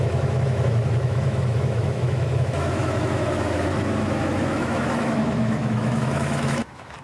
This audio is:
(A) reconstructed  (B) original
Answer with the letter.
A